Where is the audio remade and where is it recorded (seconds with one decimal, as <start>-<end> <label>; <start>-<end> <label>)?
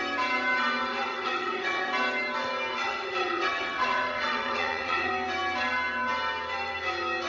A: 0.0-0.9 recorded; 0.9-1.9 remade; 1.9-2.7 recorded; 2.7-5.1 remade; 5.1-7.3 recorded